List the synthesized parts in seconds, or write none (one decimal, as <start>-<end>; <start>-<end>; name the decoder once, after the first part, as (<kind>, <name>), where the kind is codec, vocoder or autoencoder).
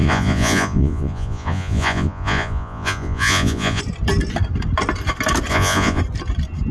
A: 0.0-3.8 (vocoder, Vocos); 5.5-6.0